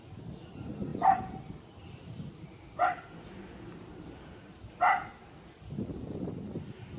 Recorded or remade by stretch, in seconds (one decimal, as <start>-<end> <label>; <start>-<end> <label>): 0.0-7.0 recorded